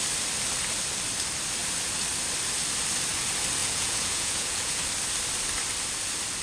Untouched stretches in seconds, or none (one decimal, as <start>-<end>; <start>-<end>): 0.0-3.6; 4.8-6.4